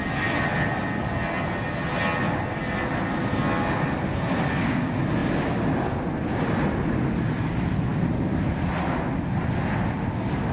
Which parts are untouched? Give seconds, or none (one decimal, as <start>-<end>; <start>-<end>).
0.0-10.5